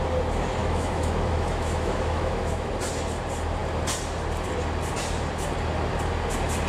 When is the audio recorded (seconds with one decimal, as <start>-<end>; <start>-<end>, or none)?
0.0-0.6; 2.7-6.7